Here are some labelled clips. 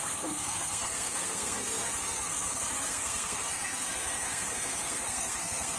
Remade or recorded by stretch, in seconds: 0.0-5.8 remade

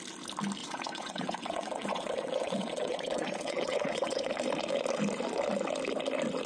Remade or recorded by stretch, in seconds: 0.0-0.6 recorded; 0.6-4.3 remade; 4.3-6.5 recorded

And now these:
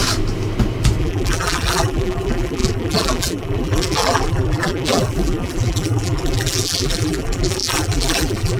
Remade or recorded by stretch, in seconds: 0.0-1.0 recorded; 1.0-8.6 remade